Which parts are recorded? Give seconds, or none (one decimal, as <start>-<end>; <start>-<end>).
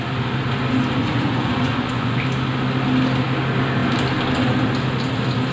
0.0-1.0; 2.2-5.5